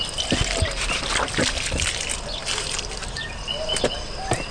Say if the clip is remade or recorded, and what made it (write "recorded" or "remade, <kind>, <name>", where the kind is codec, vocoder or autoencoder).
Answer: recorded